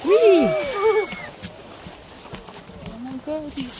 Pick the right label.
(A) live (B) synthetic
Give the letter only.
A